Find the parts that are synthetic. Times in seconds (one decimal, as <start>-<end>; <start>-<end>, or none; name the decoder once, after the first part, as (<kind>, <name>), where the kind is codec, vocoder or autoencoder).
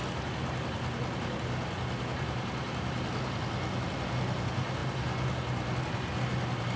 none